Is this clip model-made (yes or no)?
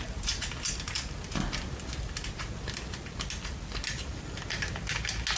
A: no